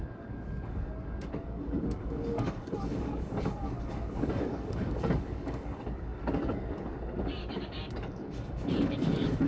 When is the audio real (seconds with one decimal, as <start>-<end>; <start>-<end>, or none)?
none